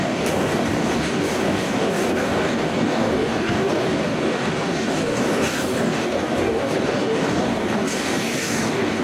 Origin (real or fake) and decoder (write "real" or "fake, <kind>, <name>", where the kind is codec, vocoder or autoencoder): fake, codec, DAC